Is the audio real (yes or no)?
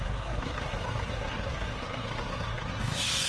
no